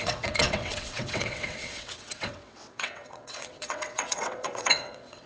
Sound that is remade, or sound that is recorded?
remade